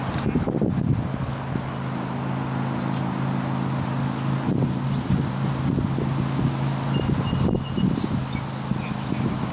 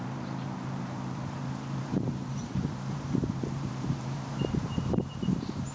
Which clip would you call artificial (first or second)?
second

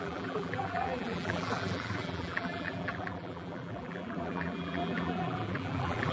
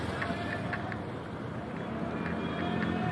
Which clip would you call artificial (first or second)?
first